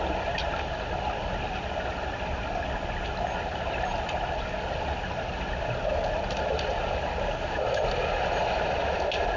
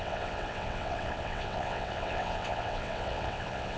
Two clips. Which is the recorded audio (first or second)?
first